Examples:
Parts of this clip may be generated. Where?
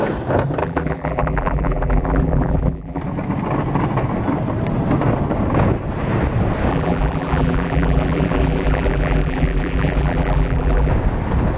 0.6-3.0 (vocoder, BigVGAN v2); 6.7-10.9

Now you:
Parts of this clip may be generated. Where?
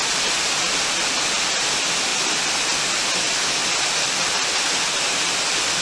none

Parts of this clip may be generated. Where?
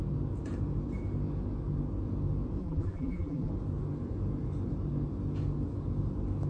2.6-3.5 (vocoder, BigVGAN v2)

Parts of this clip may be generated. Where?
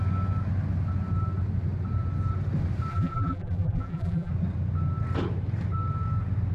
2.9-4.3 (vocoder, BigVGAN v2)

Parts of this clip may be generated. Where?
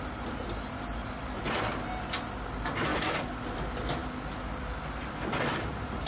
2.9-3.4 (vocoder, BigVGAN v2)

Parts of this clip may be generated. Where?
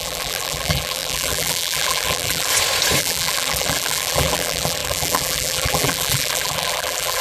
0.0-2.5 (vocoder, BigVGAN v2); 3.0-7.2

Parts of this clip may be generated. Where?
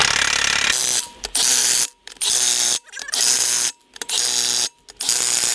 0.8-3.2 (vocoder, BigVGAN v2)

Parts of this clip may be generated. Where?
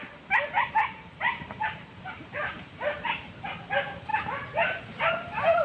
0.8-2.4 (vocoder, BigVGAN v2); 4.1-5.1